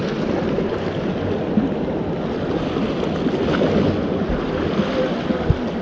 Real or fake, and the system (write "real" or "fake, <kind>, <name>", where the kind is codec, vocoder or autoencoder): real